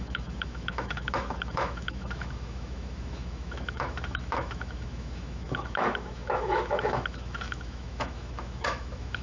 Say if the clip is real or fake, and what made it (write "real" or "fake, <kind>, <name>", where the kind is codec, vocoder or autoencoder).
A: fake, autoencoder, DAC-VAE